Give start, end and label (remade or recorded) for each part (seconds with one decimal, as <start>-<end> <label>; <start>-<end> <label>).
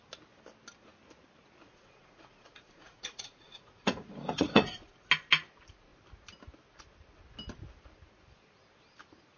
0.0-1.6 recorded; 1.6-4.9 remade; 4.9-9.4 recorded